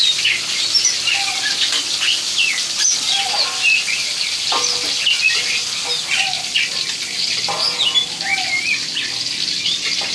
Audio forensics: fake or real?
real